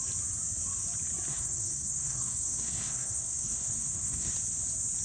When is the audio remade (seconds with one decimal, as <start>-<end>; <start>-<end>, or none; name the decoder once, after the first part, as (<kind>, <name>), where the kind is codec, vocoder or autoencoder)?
1.3-4.3 (codec, SNAC)

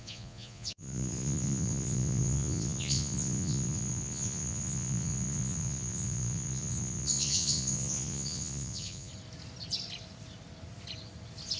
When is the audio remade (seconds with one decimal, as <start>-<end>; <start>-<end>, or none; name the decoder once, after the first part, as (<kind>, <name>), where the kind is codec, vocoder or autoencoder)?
0.0-9.1 (vocoder, Vocos)

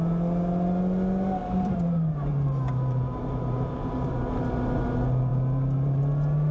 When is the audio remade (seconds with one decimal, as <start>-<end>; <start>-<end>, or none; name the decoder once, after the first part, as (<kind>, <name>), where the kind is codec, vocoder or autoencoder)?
1.4-4.1 (vocoder, BigVGAN v2); 5.3-6.0

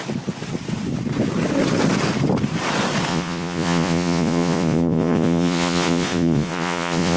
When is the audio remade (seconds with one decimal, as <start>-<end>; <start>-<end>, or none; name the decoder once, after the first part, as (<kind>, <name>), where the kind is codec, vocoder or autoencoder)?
3.1-7.2 (vocoder, Vocos)

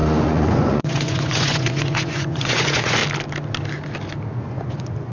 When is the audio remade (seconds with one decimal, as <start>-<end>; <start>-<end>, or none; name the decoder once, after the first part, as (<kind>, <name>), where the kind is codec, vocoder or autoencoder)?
0.0-3.0 (vocoder, Vocos); 4.3-5.1

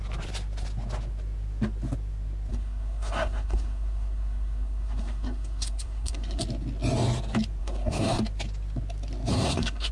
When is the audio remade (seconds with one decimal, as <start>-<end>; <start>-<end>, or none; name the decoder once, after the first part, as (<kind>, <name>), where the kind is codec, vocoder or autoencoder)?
2.5-6.4 (codec, SNAC); 7.6-8.2; 9.3-9.9

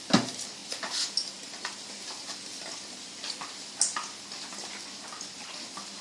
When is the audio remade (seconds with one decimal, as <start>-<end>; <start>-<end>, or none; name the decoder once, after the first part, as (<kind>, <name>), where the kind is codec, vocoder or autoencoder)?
none

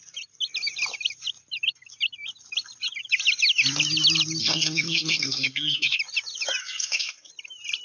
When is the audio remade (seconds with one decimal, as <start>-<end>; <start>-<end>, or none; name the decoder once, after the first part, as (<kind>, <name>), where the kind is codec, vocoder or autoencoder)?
4.4-6.0 (codec, SNAC); 6.6-7.3